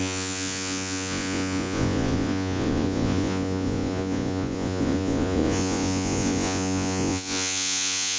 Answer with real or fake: fake